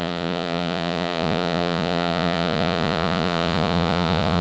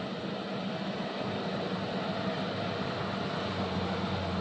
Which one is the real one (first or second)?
second